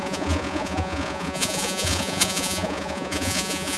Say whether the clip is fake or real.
fake